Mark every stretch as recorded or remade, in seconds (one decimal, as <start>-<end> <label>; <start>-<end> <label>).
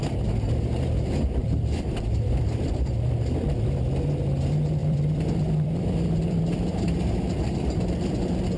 0.0-1.4 recorded; 1.4-2.7 remade; 2.7-4.8 recorded; 4.8-6.6 remade; 6.6-8.6 recorded